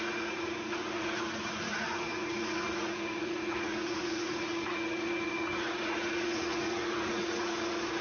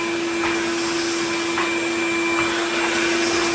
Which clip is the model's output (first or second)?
first